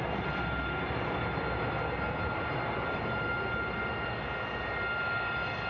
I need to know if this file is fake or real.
real